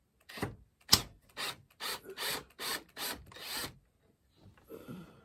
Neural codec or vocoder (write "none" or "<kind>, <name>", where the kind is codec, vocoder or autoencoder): none